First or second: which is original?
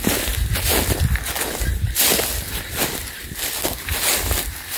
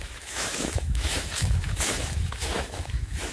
first